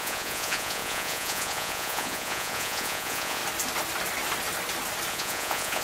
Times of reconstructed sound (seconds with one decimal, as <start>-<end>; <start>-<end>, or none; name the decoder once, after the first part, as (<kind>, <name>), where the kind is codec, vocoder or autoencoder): 0.0-3.4 (vocoder, Vocos); 5.1-5.8

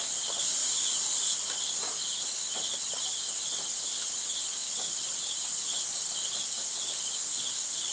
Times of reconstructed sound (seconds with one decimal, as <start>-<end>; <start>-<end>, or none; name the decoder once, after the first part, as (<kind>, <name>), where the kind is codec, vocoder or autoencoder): 0.6-1.5 (vocoder, Vocos)

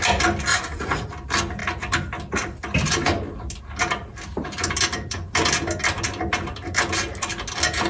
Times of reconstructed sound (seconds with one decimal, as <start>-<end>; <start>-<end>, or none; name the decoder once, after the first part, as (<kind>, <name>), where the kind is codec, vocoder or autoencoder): 0.5-1.1 (vocoder, Vocos)

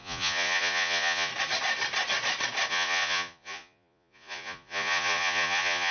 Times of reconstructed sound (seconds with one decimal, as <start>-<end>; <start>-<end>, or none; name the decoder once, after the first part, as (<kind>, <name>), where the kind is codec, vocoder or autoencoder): 0.0-1.3 (vocoder, Vocos); 2.7-5.9

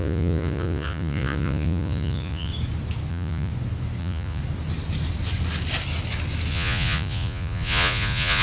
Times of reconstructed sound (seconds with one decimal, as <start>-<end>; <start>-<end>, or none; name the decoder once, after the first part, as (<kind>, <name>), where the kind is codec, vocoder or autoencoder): 0.0-2.5 (vocoder, Vocos); 3.1-3.5; 4.0-4.4; 6.5-8.4

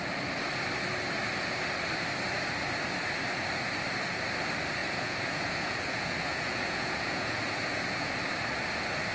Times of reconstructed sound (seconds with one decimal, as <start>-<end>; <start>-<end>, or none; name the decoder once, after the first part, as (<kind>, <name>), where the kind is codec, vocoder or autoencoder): 4.8-8.1 (vocoder, Vocos)